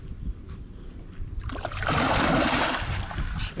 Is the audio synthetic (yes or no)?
no